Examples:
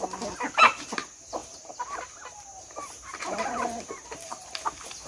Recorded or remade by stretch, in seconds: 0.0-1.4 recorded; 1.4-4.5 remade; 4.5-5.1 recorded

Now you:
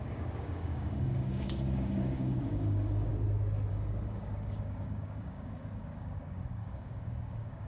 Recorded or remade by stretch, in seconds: 0.0-3.1 remade; 3.1-3.7 recorded; 3.7-7.7 remade

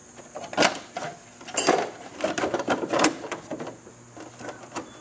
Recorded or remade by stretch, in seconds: 0.0-5.0 recorded

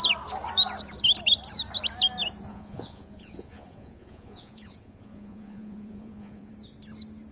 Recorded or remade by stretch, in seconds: 0.0-2.5 recorded; 2.5-6.5 remade; 6.5-7.3 recorded

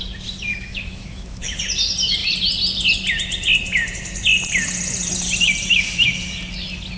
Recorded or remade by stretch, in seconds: 0.0-0.5 recorded; 0.5-1.6 remade; 1.6-7.0 recorded

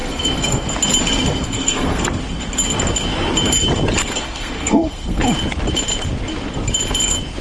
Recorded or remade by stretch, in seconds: 0.0-0.7 remade; 0.7-1.3 recorded; 1.3-2.2 remade; 2.2-4.0 recorded; 4.0-5.2 remade; 5.2-7.4 recorded